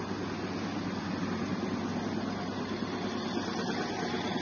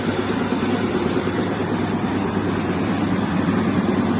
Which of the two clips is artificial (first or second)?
second